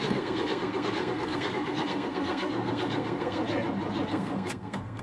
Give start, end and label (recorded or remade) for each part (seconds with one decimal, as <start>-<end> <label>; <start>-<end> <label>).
0.0-3.4 remade; 3.4-4.1 recorded; 4.1-5.0 remade